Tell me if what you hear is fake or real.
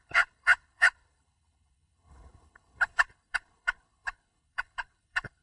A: fake